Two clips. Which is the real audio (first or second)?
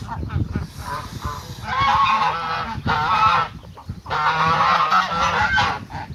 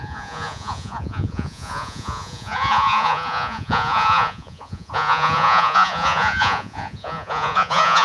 first